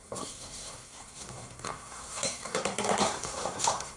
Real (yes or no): no